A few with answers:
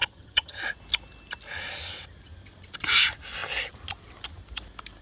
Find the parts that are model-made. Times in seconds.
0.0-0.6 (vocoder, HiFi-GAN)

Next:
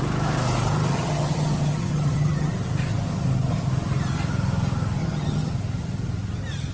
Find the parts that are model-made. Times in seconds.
0.9-2.5 (vocoder, HiFi-GAN); 5.0-5.5

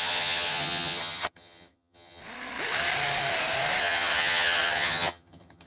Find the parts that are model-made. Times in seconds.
0.0-2.2 (vocoder, HiFi-GAN); 3.8-5.7

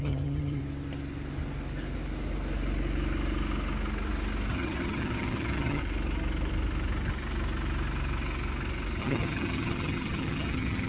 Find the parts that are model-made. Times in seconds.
0.0-0.6 (vocoder, HiFi-GAN); 4.5-5.8; 9.0-10.9

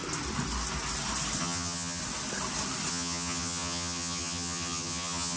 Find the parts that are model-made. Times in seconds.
1.4-2.0 (vocoder, HiFi-GAN); 2.9-5.4

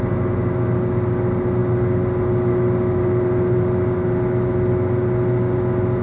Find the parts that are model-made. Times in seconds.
none

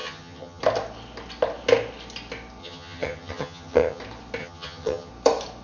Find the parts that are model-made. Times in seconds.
0.0-0.6 (vocoder, HiFi-GAN); 2.6-4.0; 4.4-5.1

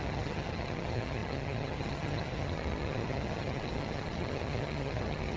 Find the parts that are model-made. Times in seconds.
0.0-5.4 (vocoder, HiFi-GAN)